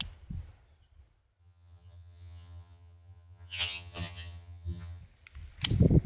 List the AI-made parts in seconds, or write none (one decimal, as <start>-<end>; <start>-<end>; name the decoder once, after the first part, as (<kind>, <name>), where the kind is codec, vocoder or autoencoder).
1.4-5.0 (vocoder, HiFi-GAN)